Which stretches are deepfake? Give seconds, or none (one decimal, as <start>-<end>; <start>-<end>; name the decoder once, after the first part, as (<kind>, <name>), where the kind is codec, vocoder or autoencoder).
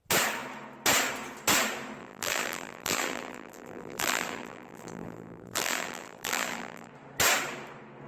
2.0-6.9 (vocoder, BigVGAN v2)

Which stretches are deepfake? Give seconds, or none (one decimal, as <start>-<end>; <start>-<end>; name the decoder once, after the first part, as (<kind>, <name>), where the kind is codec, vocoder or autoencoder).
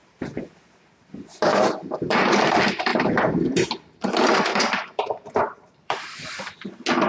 2.9-6.4 (vocoder, BigVGAN v2)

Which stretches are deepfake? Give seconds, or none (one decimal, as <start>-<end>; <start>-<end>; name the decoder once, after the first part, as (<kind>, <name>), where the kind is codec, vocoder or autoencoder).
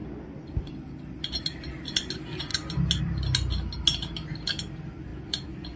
5.1-5.8 (vocoder, BigVGAN v2)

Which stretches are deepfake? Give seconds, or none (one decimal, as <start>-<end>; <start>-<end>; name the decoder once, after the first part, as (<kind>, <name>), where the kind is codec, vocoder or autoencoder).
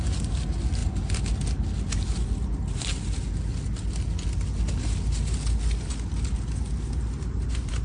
none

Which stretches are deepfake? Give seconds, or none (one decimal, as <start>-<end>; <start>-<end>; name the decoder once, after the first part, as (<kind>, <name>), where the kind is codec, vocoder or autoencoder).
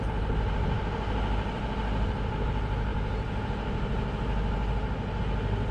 none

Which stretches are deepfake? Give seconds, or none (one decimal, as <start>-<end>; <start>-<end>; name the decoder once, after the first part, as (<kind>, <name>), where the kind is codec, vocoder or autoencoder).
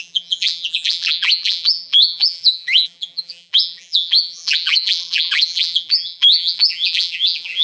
0.0-7.6 (vocoder, BigVGAN v2)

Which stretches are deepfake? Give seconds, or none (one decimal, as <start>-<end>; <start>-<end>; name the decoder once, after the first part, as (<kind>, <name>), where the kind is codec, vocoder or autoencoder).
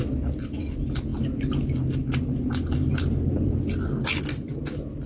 0.0-1.1 (vocoder, BigVGAN v2); 4.2-5.1